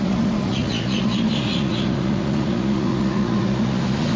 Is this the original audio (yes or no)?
no